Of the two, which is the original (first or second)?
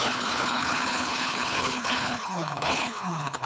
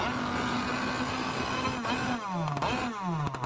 second